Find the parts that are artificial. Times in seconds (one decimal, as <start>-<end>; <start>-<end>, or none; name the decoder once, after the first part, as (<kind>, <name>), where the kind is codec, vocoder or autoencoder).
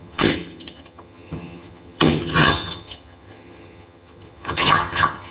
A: 0.0-5.3 (vocoder, HiFi-GAN)